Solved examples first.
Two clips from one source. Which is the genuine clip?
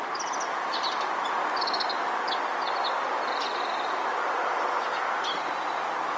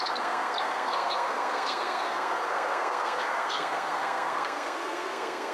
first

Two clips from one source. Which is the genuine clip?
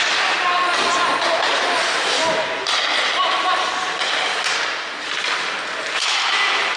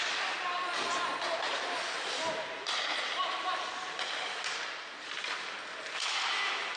first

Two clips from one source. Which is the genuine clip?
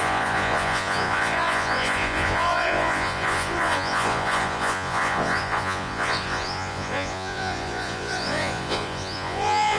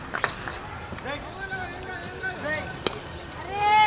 second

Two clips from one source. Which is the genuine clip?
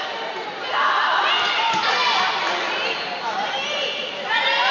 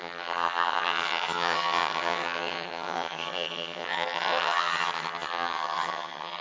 first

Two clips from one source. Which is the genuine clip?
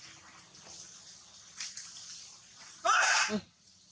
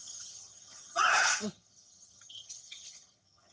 first